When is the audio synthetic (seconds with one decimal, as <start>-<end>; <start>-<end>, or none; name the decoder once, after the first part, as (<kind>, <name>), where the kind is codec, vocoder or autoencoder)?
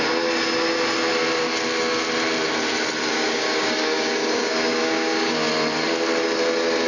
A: 3.1-5.5 (codec, DAC)